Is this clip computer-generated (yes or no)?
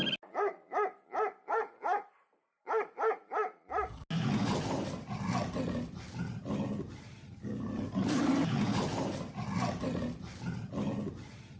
no